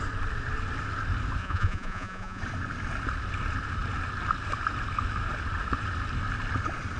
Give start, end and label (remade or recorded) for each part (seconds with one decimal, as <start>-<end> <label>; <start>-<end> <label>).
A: 0.0-1.4 recorded; 1.4-2.4 remade; 2.4-7.0 recorded